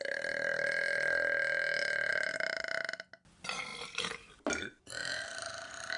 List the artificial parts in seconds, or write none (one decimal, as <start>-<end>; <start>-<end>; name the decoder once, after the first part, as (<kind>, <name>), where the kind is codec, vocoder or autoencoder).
2.1-2.7 (vocoder, BigVGAN v2); 5.0-5.5